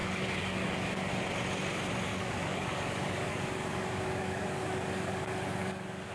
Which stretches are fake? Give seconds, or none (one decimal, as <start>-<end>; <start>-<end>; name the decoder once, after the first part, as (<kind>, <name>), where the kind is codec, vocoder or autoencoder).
0.0-1.1 (codec, DAC); 2.1-6.1

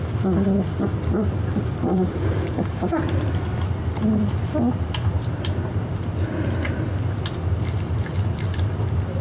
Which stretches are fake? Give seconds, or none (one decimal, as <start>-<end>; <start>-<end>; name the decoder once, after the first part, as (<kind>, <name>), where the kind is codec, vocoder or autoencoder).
1.9-3.0 (codec, DAC)

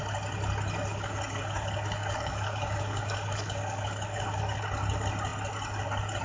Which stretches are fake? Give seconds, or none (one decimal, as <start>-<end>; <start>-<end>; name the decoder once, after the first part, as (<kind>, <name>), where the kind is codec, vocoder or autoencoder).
0.9-4.6 (codec, DAC)

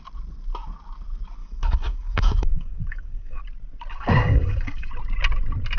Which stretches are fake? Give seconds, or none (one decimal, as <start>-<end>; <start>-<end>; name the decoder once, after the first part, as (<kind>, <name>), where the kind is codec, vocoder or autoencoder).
1.4-3.4 (codec, DAC); 3.9-4.9

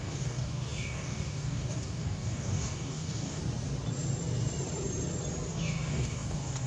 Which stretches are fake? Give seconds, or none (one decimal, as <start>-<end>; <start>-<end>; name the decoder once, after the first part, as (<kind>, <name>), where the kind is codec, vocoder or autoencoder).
0.0-3.4 (codec, DAC); 5.5-6.7